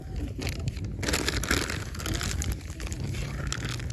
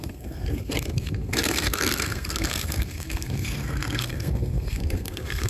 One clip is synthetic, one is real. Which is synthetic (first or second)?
second